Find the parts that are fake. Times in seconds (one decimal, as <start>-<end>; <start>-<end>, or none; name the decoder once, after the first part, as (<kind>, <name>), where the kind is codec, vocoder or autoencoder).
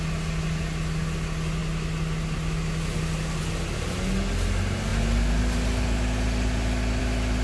none